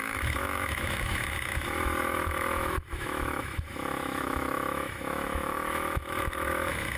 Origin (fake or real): fake